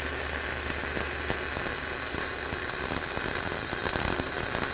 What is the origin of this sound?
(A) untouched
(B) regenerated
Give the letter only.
A